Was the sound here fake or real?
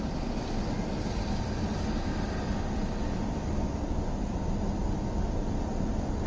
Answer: real